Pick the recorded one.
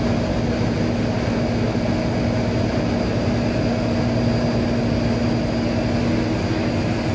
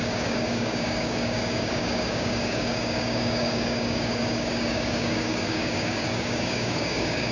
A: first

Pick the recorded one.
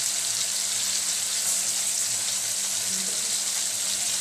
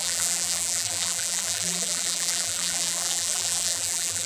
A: first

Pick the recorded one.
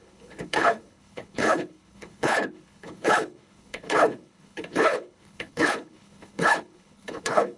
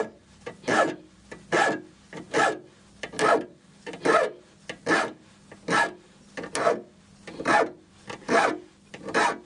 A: second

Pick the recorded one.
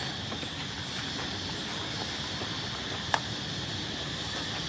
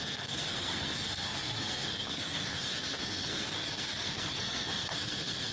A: first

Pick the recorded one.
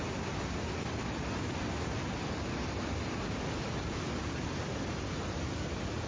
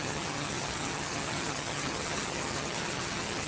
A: first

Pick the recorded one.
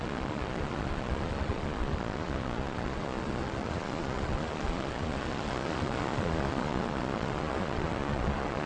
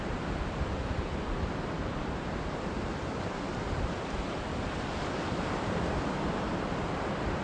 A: second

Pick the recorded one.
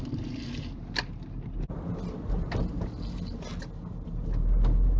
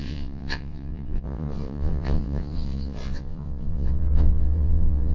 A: first